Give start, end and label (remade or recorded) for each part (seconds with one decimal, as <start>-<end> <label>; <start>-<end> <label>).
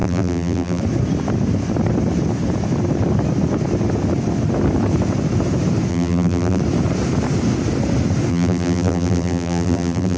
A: 0.0-0.8 remade; 0.8-5.9 recorded; 5.9-6.6 remade; 6.6-8.3 recorded; 8.3-10.2 remade